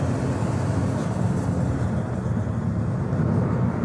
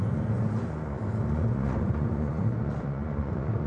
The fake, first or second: second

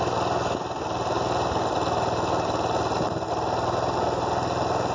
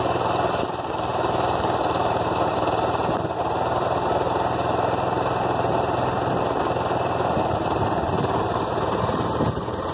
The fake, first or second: second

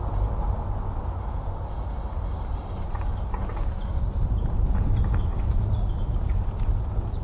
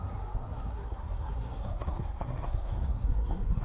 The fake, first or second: second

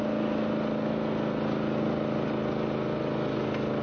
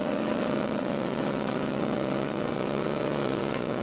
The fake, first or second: second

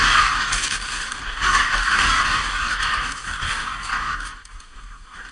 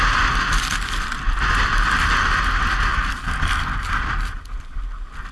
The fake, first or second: first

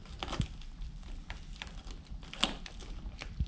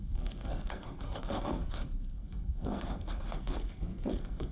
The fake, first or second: second